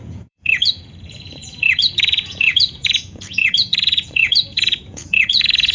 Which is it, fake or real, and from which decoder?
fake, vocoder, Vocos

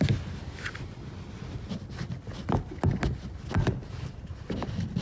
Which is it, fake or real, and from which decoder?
real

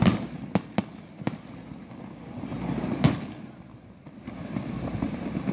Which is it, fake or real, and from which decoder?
real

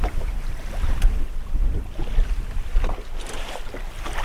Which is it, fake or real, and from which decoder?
real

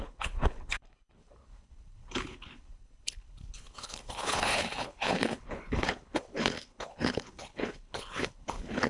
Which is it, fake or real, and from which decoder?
fake, codec, HILCodec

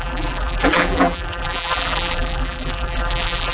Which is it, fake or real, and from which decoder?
fake, vocoder, BigVGAN v2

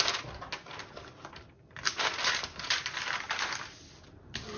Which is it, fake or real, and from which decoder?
real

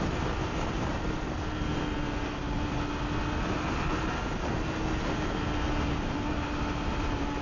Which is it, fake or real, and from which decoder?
real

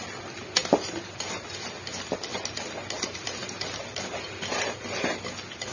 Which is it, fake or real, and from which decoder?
real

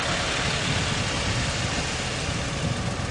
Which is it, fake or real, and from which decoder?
real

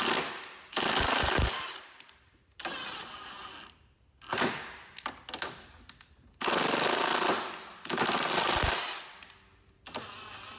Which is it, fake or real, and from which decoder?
real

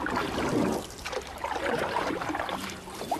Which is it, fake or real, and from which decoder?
real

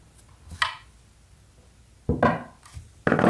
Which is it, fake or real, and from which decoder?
real